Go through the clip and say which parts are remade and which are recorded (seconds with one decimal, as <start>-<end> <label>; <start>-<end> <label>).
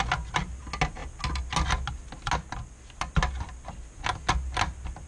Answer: 0.0-5.1 recorded